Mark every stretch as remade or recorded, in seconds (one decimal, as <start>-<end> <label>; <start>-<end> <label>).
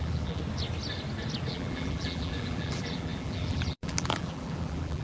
0.0-0.4 remade; 0.4-1.5 recorded; 1.5-5.0 remade